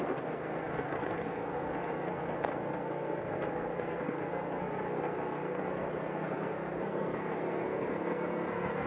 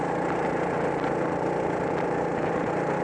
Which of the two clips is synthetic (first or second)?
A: first